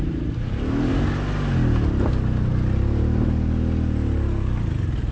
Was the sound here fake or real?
real